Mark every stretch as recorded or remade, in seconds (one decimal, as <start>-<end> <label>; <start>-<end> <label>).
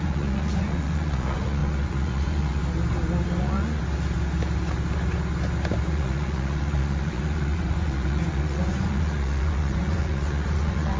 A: 0.0-2.6 remade; 2.6-3.4 recorded; 3.4-3.8 remade; 3.8-5.9 recorded; 5.9-11.0 remade